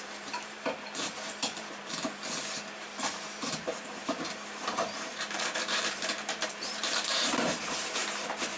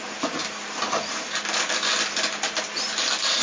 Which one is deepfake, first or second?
first